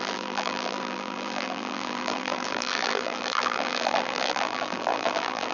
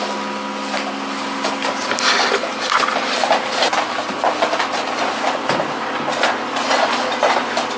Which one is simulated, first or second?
first